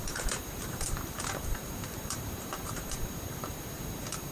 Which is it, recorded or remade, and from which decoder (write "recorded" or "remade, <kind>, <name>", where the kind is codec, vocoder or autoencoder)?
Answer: remade, vocoder, BigVGAN v2